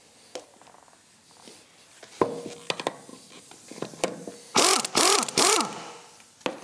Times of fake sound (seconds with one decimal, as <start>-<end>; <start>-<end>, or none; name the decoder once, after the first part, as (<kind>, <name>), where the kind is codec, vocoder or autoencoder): 3.1-4.3 (vocoder, BigVGAN v2)